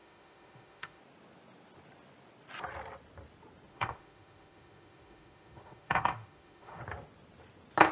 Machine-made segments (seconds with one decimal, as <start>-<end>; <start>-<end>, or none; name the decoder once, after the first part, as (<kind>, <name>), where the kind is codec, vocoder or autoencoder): 0.0-1.0 (autoencoder, DAC-VAE); 3.7-6.8